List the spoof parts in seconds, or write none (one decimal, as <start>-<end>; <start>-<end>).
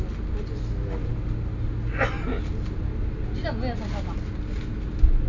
none